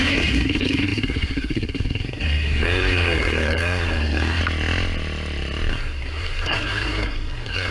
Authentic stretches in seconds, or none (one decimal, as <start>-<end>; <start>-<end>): 4.4-5.7